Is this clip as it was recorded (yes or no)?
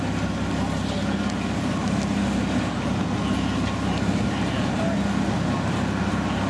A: yes